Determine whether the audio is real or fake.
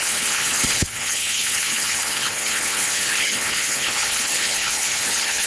fake